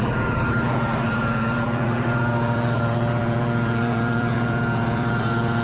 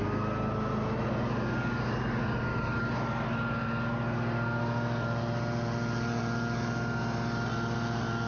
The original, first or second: second